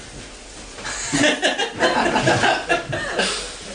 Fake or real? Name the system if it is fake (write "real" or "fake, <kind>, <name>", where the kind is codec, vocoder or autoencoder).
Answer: real